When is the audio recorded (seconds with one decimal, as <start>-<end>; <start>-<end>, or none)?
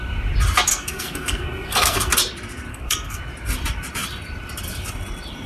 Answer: 0.0-0.7; 2.1-2.7; 3.2-5.5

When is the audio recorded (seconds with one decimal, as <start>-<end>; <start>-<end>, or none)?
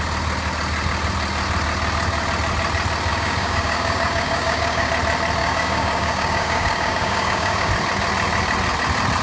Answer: 0.0-3.1; 4.9-5.4; 7.7-9.2